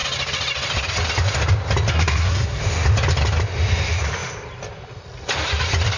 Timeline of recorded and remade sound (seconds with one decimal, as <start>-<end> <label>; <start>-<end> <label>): 0.0-1.9 recorded; 1.9-2.6 remade; 2.6-6.0 recorded